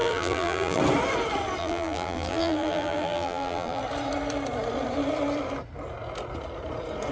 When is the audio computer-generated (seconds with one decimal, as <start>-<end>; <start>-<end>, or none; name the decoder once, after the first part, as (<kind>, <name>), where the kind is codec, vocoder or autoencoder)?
0.0-0.8 (vocoder, BigVGAN v2); 1.6-3.8